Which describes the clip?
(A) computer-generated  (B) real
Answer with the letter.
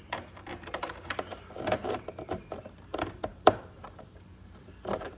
A